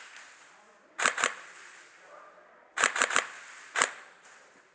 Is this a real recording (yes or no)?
no